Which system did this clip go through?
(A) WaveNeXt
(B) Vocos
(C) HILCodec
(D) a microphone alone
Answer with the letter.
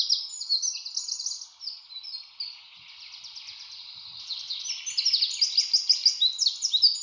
D